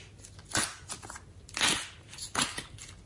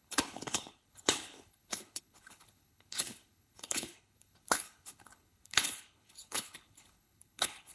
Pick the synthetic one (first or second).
second